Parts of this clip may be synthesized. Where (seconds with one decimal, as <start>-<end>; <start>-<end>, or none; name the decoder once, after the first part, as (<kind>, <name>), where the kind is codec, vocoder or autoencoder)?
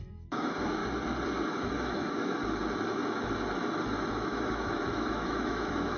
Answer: 0.0-0.8 (autoencoder, DAC-VAE); 1.5-2.4; 4.1-6.0